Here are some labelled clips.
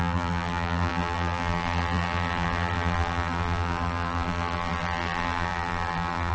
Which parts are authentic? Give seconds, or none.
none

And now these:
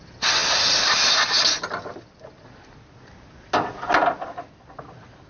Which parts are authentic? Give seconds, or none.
0.0-5.3

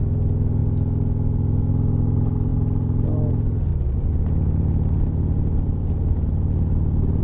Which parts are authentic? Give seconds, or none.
0.0-7.2

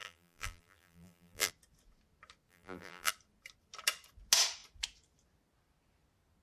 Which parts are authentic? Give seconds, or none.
1.5-2.5; 3.1-6.4

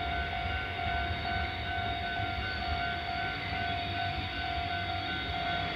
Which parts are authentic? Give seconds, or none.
0.0-5.8